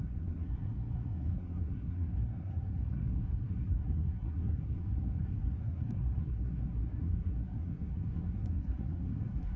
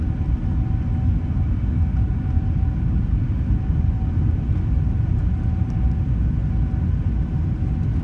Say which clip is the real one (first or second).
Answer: second